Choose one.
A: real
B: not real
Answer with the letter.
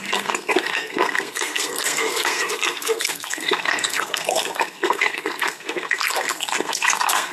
B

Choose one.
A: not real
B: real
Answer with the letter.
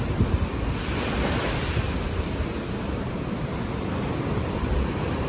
A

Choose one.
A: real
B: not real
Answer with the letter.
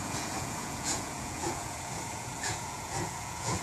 B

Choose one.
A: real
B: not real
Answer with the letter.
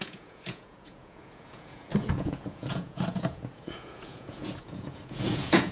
B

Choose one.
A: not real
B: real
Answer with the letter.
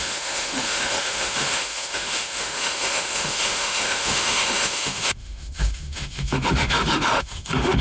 A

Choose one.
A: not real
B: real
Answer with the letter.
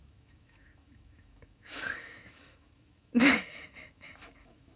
A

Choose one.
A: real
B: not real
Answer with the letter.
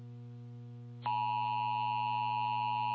A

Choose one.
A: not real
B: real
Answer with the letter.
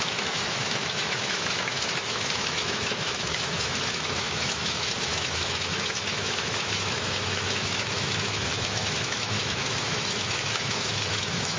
A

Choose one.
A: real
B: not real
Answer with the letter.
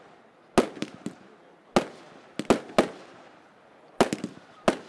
A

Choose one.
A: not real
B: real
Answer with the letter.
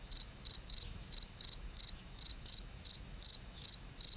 A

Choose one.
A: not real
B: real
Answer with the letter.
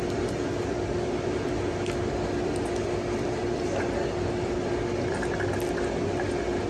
B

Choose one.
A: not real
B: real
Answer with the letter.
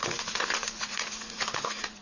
A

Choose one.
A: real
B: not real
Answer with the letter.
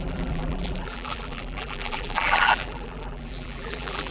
B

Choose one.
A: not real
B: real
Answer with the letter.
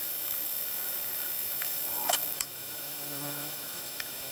A